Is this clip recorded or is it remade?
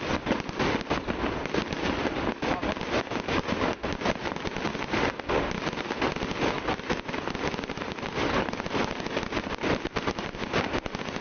recorded